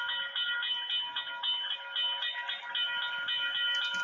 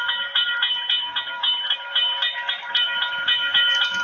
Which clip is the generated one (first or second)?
second